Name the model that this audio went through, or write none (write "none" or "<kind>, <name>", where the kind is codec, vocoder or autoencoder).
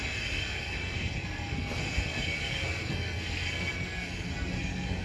codec, SNAC